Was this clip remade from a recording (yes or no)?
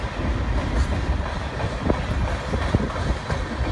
no